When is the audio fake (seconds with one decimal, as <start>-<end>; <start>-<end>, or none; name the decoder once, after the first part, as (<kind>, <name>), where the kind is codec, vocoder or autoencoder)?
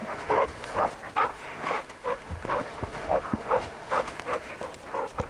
0.0-0.9 (autoencoder, DAC-VAE); 1.3-4.5